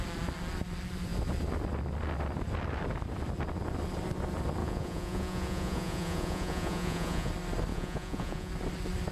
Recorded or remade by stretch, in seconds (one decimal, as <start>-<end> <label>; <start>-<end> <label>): 0.0-4.6 recorded; 4.6-7.3 remade; 7.3-7.7 recorded; 7.7-8.5 remade; 8.5-9.1 recorded